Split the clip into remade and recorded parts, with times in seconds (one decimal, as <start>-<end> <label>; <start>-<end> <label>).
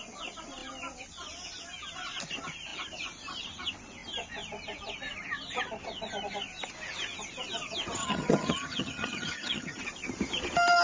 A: 0.0-8.0 recorded; 8.0-9.8 remade; 9.8-10.8 recorded